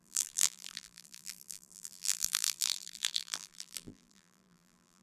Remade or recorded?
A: remade